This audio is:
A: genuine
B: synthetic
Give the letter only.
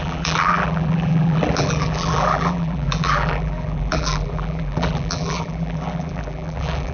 B